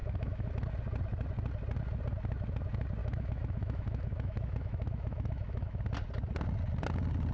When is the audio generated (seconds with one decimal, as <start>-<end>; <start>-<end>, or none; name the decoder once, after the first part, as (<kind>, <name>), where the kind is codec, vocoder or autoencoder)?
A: 0.0-0.5 (autoencoder, DAC-VAE); 3.0-5.8